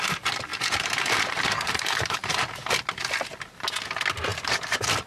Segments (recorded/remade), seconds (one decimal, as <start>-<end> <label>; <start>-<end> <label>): 0.0-0.5 recorded; 0.5-2.3 remade; 2.3-4.3 recorded; 4.3-5.1 remade